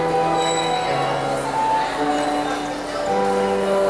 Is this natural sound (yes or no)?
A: yes